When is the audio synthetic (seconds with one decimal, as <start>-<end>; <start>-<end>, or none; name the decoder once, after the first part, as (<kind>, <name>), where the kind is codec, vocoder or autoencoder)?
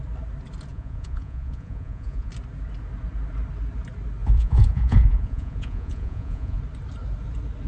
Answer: 0.7-2.3 (vocoder, Vocos); 4.2-6.6